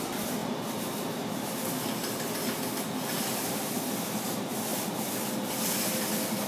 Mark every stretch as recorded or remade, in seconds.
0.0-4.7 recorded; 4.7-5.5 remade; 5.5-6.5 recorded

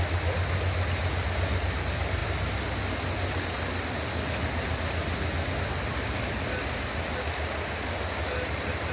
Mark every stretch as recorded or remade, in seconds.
0.0-8.9 recorded

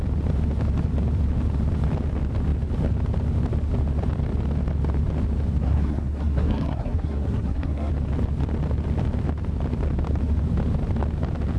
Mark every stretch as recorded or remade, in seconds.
0.0-5.6 recorded; 5.6-7.9 remade; 7.9-11.6 recorded

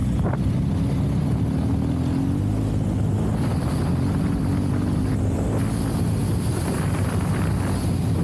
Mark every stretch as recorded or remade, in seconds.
0.0-8.2 recorded

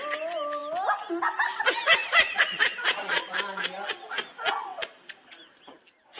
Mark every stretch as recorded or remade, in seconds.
0.0-2.0 recorded; 2.0-3.3 remade; 3.3-6.2 recorded

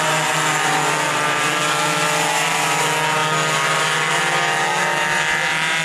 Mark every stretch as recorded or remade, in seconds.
0.0-5.8 recorded